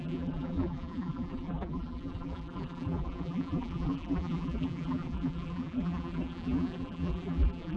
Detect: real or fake fake